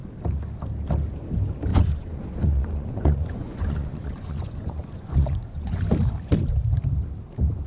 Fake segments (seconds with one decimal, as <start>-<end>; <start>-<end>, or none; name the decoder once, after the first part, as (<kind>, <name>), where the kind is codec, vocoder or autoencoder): 1.7-5.8 (vocoder, Vocos)